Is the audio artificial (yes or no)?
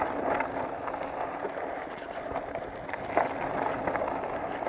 no